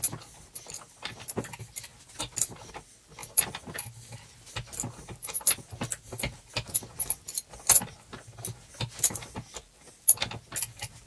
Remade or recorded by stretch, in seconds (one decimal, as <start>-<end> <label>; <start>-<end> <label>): 0.0-11.1 recorded